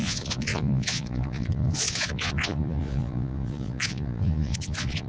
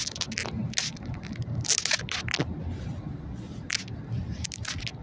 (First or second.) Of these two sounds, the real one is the second